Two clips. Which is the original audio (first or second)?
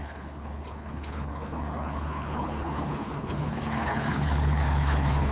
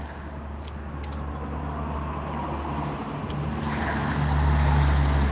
second